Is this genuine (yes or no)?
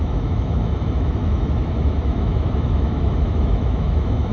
no